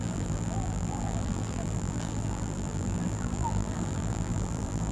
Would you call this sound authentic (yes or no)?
no